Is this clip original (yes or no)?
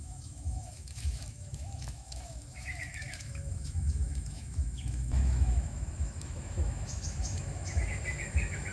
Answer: no